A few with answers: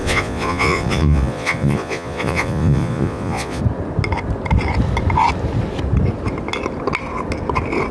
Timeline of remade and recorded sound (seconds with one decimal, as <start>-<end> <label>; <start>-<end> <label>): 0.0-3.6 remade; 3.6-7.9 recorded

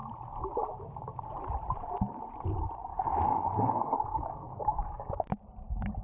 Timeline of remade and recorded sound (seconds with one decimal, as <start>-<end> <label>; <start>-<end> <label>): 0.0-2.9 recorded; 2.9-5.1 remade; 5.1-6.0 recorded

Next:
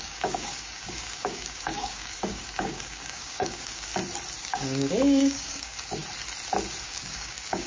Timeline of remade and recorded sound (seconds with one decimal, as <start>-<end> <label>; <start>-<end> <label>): 0.0-3.9 remade; 3.9-4.4 recorded; 4.4-6.0 remade; 6.0-6.8 recorded; 6.8-7.7 remade

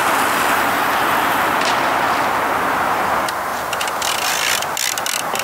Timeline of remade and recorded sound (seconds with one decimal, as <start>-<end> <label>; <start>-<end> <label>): 0.0-5.4 recorded

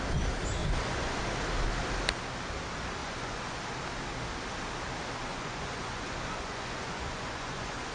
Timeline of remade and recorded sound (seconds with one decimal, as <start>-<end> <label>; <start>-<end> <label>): 0.0-0.6 recorded; 0.6-1.2 remade; 1.2-3.0 recorded; 3.0-3.6 remade; 3.6-5.3 recorded; 5.3-7.9 remade

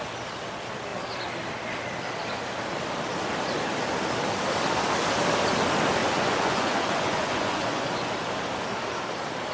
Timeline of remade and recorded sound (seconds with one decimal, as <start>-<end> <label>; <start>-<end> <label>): 0.0-6.0 recorded; 6.0-8.1 remade; 8.1-9.5 recorded